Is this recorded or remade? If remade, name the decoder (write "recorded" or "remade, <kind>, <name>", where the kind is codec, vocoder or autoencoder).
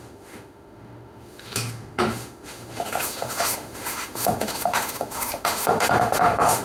remade, autoencoder, DAC-VAE